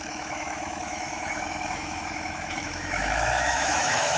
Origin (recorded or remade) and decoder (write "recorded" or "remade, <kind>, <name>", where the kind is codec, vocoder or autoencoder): remade, autoencoder, DAC-VAE